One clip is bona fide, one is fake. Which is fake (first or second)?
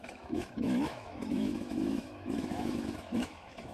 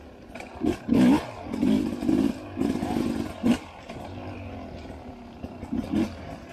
first